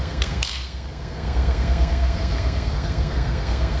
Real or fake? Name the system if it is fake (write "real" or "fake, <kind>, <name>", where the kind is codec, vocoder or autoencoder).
fake, codec, SNAC